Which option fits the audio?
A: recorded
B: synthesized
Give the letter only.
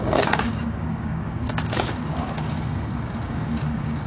B